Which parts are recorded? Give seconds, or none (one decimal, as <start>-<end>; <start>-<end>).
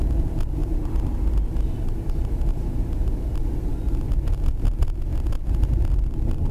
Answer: 0.0-0.6; 1.3-3.0; 3.7-6.5